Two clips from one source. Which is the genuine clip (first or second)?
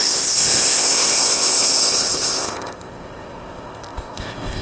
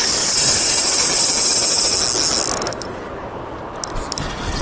second